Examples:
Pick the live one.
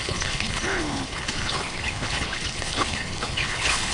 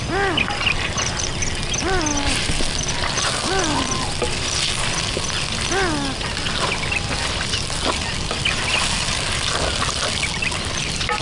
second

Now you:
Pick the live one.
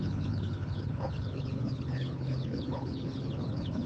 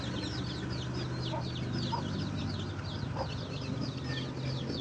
second